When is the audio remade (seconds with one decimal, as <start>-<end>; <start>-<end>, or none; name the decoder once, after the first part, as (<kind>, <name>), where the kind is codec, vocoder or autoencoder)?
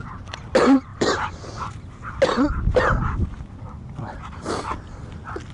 0.9-2.1 (vocoder, BigVGAN v2)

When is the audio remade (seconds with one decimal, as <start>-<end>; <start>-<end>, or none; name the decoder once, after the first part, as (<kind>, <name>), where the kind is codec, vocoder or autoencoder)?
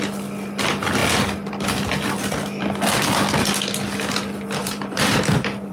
4.6-5.7 (vocoder, BigVGAN v2)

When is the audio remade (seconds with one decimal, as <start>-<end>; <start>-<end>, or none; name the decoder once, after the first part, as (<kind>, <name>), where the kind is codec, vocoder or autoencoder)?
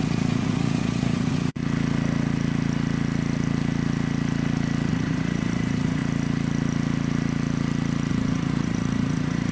0.0-1.6 (vocoder, Vocos); 4.9-6.0; 8.1-9.5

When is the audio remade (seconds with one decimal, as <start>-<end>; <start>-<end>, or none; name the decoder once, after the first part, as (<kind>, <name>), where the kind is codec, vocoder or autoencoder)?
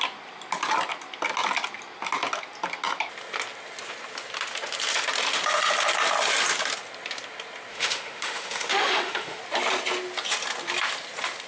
7.7-9.4 (autoencoder, DAC-VAE)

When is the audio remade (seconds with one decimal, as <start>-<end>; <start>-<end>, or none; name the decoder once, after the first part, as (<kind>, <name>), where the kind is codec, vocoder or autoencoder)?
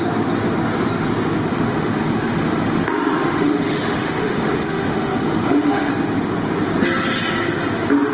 1.5-5.9 (autoencoder, DAC-VAE)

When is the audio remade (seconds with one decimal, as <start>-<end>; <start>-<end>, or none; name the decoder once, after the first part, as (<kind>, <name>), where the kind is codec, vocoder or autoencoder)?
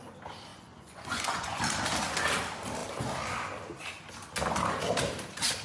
0.5-1.6 (vocoder, Vocos)